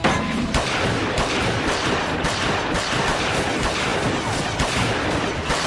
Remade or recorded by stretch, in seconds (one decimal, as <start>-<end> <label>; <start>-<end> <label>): 0.0-5.7 recorded